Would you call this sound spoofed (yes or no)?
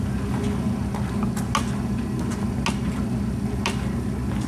no